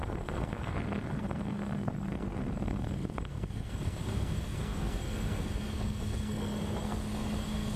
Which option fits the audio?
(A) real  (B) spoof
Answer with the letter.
B